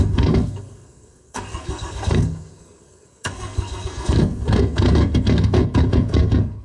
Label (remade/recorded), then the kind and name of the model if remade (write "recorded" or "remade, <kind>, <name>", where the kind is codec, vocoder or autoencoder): remade, codec, SNAC